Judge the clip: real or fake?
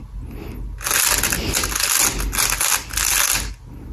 real